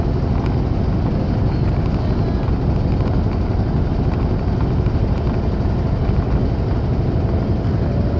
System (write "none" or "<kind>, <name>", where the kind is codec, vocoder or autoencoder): none